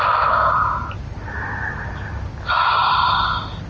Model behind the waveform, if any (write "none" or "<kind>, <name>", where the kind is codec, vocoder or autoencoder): none